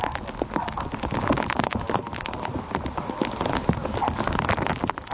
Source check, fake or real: real